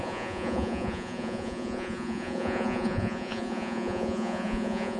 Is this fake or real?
fake